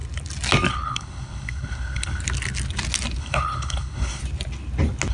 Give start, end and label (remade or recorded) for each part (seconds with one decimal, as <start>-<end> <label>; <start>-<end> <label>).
0.0-0.7 recorded; 0.7-2.2 remade; 2.2-3.2 recorded; 3.2-4.2 remade; 4.2-5.1 recorded